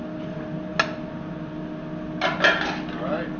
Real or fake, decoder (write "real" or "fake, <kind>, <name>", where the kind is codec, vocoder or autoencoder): real